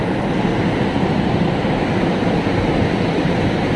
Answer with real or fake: fake